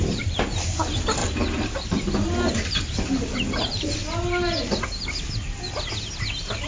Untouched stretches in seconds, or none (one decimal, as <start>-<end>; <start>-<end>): 1.2-2.5; 4.0-6.7